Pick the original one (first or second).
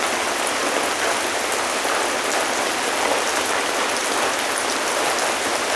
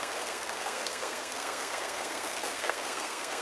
first